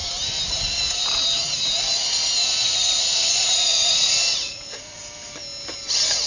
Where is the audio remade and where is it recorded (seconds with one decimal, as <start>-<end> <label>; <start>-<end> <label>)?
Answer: 0.0-2.6 recorded; 2.6-5.0 remade; 5.0-6.3 recorded